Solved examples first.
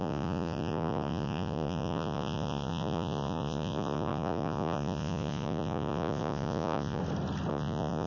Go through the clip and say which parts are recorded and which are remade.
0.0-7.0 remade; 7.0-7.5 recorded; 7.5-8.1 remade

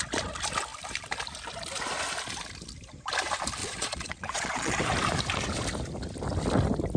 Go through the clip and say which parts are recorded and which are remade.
0.0-3.6 recorded; 3.6-4.8 remade; 4.8-7.0 recorded

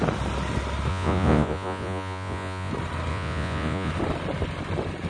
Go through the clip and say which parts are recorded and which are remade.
0.0-0.9 recorded; 0.9-2.7 remade; 2.7-3.1 recorded; 3.1-3.9 remade; 3.9-5.1 recorded

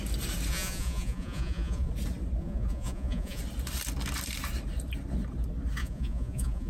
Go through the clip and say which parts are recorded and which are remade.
0.0-0.5 recorded; 0.5-1.9 remade; 1.9-2.4 recorded; 2.4-3.4 remade; 3.4-5.8 recorded; 5.8-6.7 remade

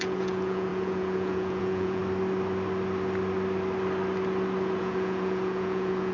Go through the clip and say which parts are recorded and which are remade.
0.0-2.0 remade; 2.0-4.8 recorded; 4.8-6.1 remade

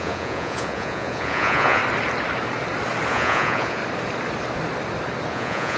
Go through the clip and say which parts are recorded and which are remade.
0.0-1.8 remade; 1.8-3.1 recorded; 3.1-3.8 remade; 3.8-5.3 recorded; 5.3-5.8 remade

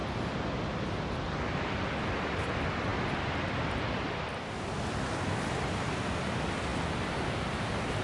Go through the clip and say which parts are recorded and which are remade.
0.0-8.0 recorded

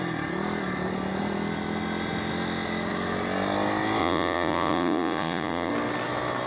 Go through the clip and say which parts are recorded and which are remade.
0.0-4.0 recorded; 4.0-5.7 remade; 5.7-6.5 recorded